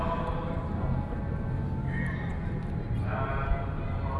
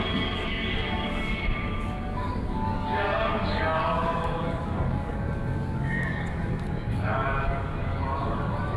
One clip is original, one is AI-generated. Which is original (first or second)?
first